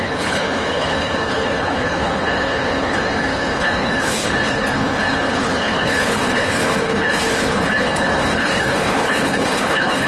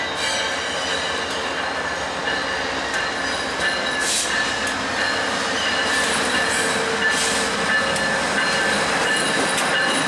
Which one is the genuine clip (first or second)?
second